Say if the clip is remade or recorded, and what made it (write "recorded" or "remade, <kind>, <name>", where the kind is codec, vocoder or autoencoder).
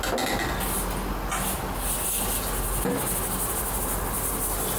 recorded